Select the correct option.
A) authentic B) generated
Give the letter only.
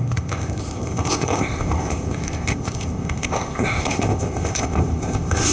B